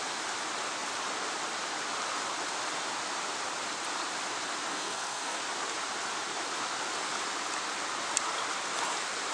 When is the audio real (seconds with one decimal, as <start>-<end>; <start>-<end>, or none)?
0.0-4.7; 5.4-9.3